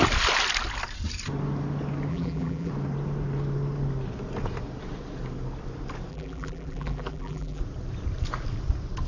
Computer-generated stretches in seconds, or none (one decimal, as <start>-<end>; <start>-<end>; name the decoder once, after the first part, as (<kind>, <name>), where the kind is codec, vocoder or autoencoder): 2.1-2.7 (vocoder, BigVGAN v2); 6.1-7.6